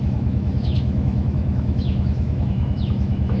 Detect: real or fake fake